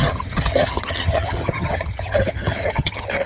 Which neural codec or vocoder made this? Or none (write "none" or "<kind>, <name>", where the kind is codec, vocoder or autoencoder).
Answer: vocoder, HiFi-GAN